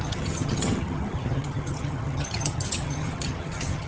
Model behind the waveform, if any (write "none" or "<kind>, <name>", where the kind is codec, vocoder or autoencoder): vocoder, HiFi-GAN